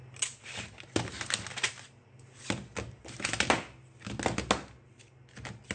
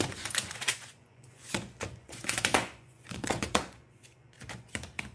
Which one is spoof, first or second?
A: second